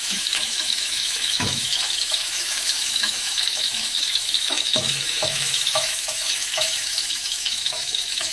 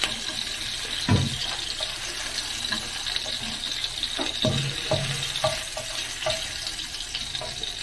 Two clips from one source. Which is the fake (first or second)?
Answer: first